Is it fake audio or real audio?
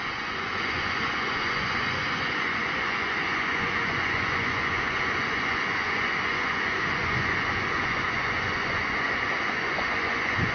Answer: fake